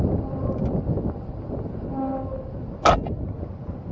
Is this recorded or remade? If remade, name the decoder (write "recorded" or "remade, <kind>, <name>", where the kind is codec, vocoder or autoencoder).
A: recorded